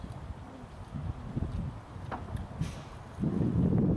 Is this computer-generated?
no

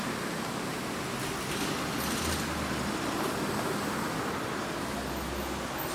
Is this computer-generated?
no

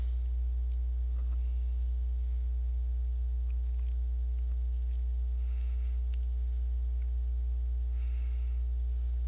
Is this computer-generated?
no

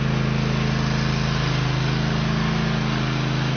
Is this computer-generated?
no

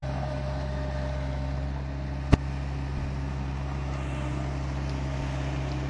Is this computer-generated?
no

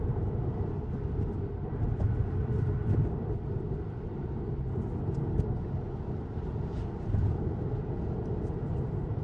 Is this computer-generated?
no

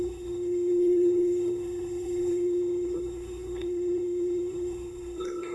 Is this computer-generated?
yes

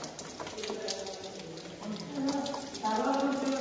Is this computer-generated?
no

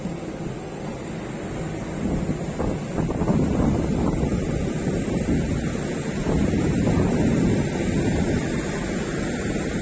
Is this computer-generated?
no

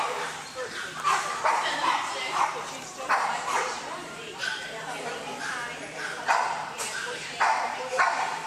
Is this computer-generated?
yes